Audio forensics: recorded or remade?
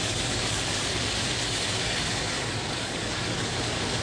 remade